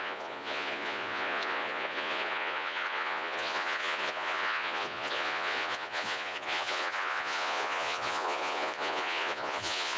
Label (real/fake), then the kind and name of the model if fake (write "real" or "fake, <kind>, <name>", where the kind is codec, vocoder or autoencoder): fake, vocoder, Vocos